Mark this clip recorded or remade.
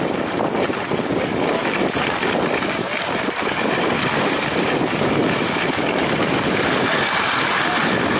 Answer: recorded